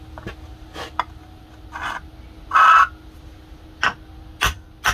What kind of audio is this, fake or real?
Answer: real